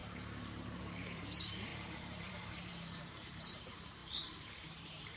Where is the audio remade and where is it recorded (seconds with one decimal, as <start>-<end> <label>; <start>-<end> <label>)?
0.0-5.2 remade